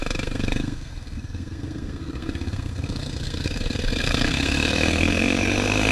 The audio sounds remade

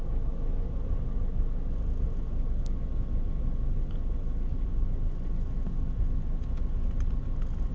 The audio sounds recorded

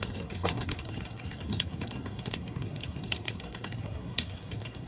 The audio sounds remade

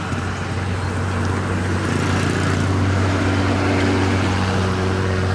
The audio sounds recorded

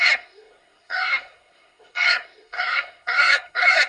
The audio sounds remade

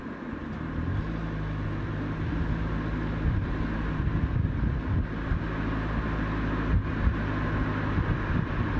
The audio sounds recorded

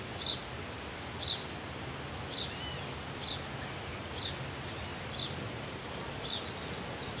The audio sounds recorded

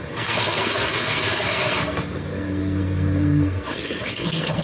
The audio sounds remade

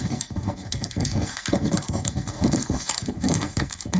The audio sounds remade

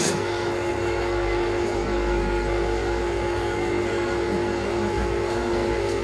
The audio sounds remade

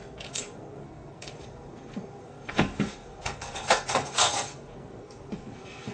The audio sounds remade